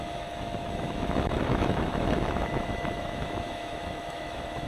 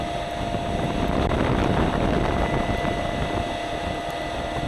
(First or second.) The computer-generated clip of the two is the first